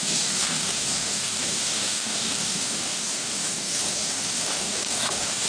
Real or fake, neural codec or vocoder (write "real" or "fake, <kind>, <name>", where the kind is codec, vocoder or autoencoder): fake, codec, DAC